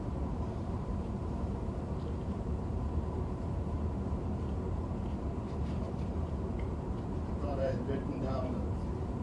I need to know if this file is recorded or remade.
remade